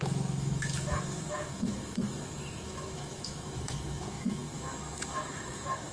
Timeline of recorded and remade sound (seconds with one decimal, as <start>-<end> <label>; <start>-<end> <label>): 0.0-5.9 remade